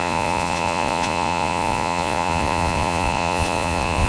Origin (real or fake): fake